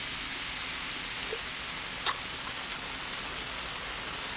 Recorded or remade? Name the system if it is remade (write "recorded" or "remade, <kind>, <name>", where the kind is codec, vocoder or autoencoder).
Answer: recorded